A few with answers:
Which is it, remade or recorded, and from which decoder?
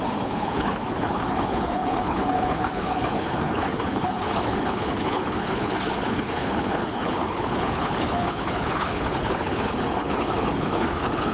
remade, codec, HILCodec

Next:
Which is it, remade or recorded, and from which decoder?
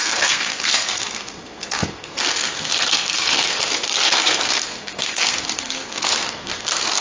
remade, codec, SNAC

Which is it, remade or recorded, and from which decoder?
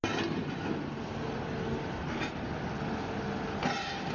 recorded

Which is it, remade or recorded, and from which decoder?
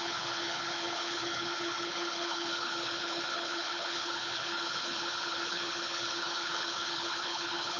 remade, codec, HILCodec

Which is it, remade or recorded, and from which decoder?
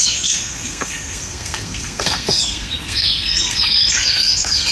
remade, codec, SNAC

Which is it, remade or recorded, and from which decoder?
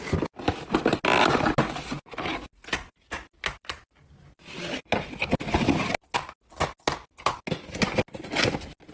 recorded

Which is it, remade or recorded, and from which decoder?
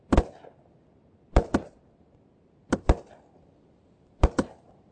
recorded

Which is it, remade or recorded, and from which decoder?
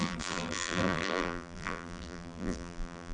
remade, vocoder, BigVGAN v2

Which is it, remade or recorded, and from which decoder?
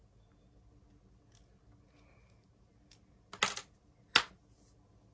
recorded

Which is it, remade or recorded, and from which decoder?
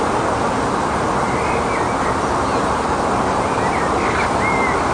recorded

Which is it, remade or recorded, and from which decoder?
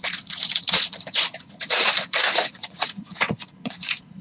remade, vocoder, Vocos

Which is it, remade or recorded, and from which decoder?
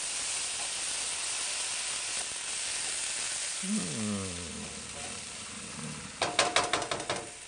recorded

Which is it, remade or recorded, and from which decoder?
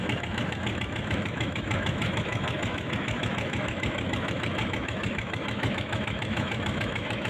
remade, autoencoder, DAC-VAE